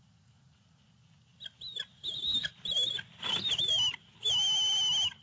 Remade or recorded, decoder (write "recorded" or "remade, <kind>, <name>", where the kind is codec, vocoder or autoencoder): recorded